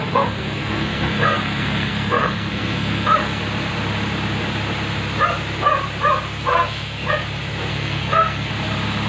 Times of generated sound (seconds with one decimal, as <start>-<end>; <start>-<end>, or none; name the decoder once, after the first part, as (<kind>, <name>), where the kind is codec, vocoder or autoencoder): 0.0-3.4 (codec, SNAC); 6.5-7.1; 7.7-8.5